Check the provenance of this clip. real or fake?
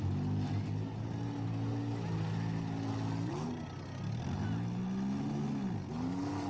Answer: real